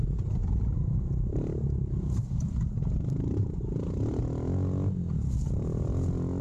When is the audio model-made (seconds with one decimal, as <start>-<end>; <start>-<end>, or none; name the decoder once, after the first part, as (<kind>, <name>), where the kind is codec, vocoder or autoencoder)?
0.4-4.2 (vocoder, BigVGAN v2)